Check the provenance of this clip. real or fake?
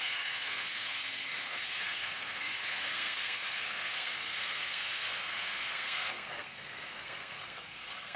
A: fake